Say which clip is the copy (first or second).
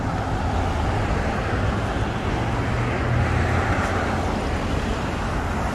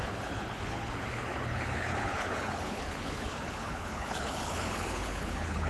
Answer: second